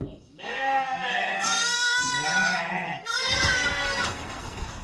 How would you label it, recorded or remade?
remade